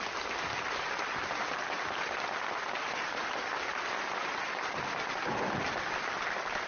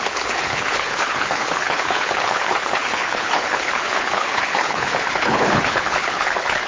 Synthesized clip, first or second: second